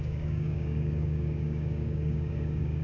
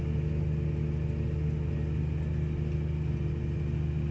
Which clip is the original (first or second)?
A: second